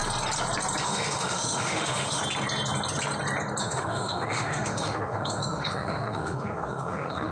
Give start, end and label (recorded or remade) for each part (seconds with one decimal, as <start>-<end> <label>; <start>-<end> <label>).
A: 0.0-0.8 recorded; 0.8-2.2 remade; 2.2-3.6 recorded; 3.6-7.3 remade